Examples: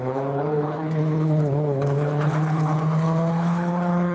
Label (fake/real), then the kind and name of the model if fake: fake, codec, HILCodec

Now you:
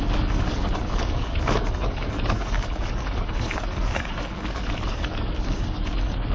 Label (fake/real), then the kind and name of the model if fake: fake, codec, DAC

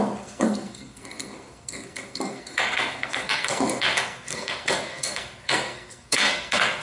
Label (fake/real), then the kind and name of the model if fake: fake, codec, SNAC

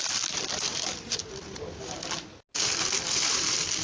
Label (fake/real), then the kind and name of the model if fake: real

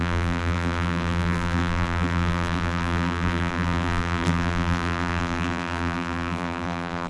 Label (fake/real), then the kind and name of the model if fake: fake, vocoder, BigVGAN v2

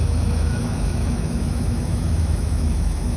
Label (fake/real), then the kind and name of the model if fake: fake, autoencoder, DAC-VAE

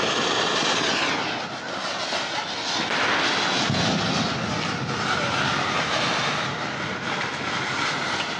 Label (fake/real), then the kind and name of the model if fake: real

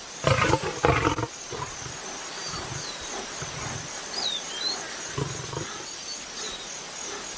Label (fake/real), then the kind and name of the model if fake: fake, vocoder, BigVGAN v2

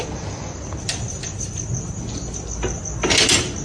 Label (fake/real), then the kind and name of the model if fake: real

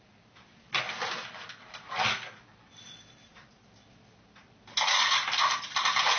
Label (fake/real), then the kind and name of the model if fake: real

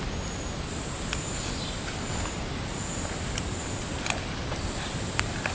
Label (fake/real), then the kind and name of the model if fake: real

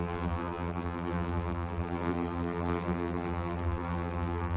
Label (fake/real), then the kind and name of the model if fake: fake, vocoder, BigVGAN v2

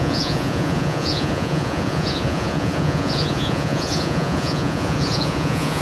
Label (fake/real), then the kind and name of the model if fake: fake, vocoder, Vocos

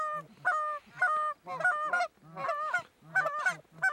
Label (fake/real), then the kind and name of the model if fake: real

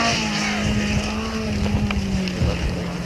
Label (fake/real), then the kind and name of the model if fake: real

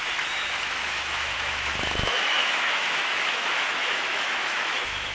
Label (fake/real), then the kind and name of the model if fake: fake, autoencoder, DAC-VAE